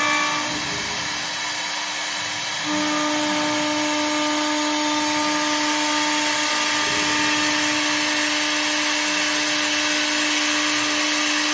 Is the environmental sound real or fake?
real